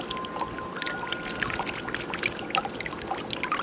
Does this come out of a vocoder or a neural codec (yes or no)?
yes